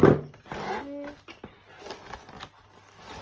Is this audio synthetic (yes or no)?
no